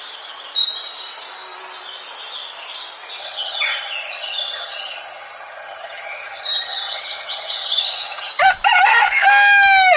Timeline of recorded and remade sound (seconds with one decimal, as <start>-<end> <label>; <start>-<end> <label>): 0.0-3.2 recorded; 3.2-8.3 remade; 8.3-10.0 recorded